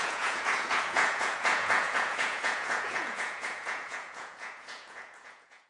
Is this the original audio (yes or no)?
no